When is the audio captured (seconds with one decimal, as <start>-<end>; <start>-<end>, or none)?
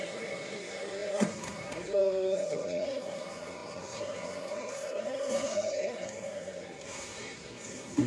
none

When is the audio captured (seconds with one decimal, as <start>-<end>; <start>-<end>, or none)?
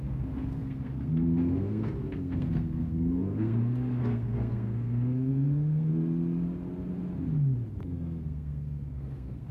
5.9-7.8